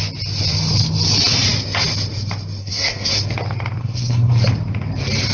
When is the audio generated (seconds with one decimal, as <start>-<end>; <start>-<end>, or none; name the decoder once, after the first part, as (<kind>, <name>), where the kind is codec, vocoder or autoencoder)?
2.6-3.2 (codec, SNAC); 3.8-4.3